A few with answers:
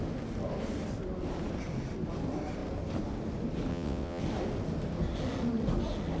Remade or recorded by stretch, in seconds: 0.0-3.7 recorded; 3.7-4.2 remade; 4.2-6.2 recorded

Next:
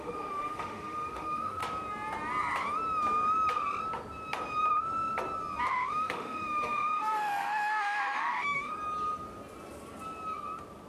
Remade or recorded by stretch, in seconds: 0.0-1.6 remade; 1.6-5.7 recorded; 5.7-8.7 remade; 8.7-10.9 recorded